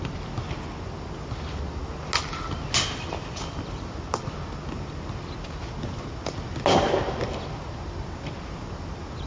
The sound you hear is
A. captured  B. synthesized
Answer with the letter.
A